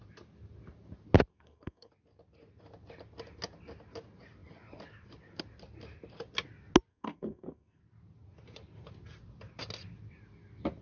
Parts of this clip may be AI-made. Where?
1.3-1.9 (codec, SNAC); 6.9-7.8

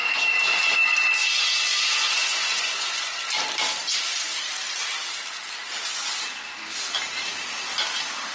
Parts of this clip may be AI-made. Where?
1.7-3.1 (vocoder, Vocos)